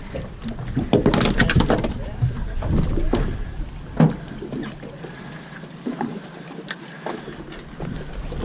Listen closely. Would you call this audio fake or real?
real